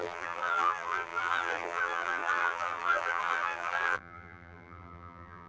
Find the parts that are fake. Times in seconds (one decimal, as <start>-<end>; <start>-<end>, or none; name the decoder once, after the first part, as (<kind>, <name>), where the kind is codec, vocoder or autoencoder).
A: 0.0-5.5 (vocoder, BigVGAN v2)